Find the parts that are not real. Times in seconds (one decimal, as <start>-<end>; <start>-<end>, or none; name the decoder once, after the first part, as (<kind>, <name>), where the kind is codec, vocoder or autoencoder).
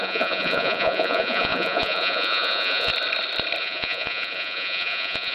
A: 0.0-2.9 (vocoder, Vocos); 3.6-5.3